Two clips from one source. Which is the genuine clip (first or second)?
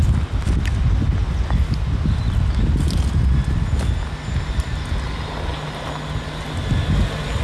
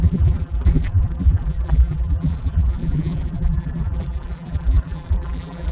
first